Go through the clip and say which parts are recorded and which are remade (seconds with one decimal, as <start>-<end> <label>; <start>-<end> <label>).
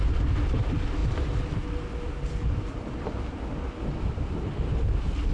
0.0-5.3 recorded